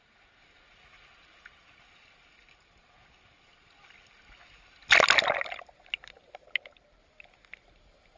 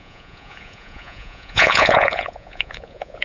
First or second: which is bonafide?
first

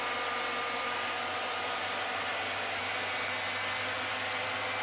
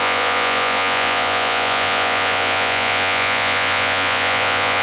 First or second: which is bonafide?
first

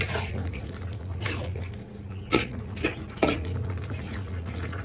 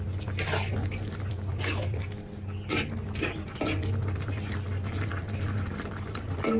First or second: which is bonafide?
second